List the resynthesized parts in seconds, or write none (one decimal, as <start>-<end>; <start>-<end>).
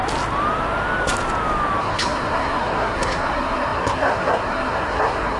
1.8-5.4